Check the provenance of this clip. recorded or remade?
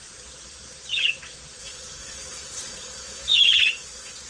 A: remade